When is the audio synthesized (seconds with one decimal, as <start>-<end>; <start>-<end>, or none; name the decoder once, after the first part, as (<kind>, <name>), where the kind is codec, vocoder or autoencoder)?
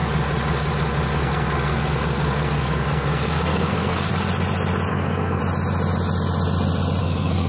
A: 1.2-4.1 (codec, SNAC); 4.9-5.4; 7.0-7.5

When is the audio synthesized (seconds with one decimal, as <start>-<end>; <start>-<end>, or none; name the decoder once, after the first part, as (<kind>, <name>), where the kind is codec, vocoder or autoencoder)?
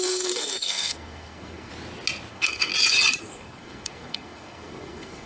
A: 0.0-1.7 (codec, SNAC); 2.3-2.7; 3.2-5.3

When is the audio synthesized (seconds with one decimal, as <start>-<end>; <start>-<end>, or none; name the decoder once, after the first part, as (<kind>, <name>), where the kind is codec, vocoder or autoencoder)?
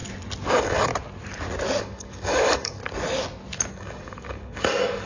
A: 0.5-0.9 (codec, DAC); 1.8-2.8; 3.7-5.1